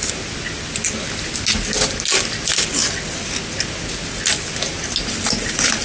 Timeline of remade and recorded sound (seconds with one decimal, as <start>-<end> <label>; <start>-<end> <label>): 0.0-5.8 recorded